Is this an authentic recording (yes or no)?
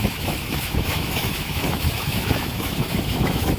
no